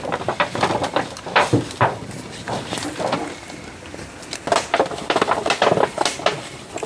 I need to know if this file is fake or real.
real